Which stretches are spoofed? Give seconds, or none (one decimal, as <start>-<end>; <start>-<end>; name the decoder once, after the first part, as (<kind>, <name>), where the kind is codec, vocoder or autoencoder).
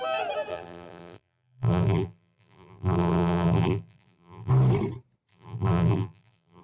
0.5-4.5 (vocoder, BigVGAN v2); 5.3-6.6